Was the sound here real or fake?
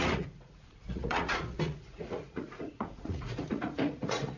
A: fake